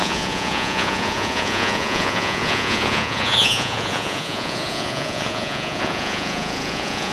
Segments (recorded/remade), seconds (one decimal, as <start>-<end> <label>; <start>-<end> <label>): 0.0-7.1 remade